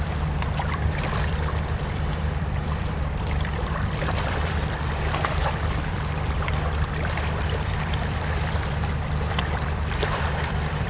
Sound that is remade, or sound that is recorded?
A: remade